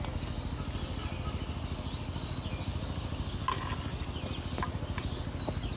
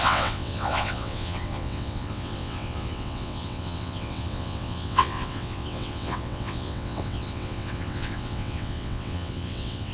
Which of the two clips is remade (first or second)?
second